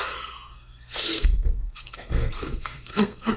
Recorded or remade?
remade